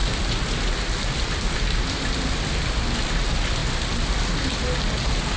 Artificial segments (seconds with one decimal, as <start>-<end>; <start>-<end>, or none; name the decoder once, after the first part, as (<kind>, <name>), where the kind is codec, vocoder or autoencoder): none